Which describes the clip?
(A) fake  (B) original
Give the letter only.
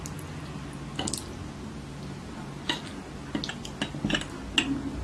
B